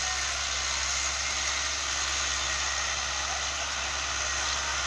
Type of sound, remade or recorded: recorded